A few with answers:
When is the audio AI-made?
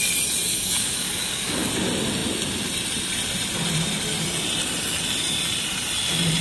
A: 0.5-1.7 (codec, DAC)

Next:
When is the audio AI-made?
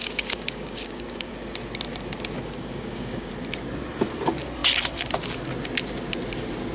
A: 0.0-1.3 (codec, DAC); 2.6-3.3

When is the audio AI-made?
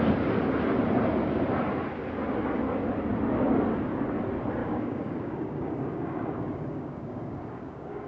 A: 4.6-8.1 (codec, DAC)